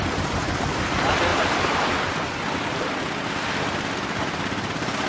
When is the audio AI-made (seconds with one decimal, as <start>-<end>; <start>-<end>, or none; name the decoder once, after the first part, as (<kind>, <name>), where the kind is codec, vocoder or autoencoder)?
none